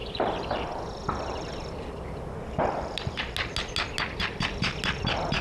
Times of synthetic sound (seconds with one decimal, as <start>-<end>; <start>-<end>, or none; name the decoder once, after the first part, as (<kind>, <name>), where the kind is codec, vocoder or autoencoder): none